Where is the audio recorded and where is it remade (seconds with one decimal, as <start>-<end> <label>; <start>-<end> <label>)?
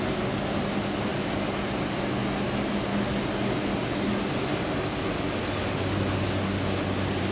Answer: 0.0-7.3 recorded